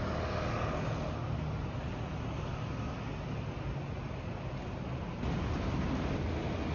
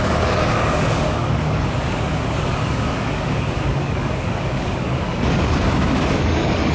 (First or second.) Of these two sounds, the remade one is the second